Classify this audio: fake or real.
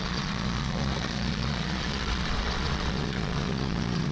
fake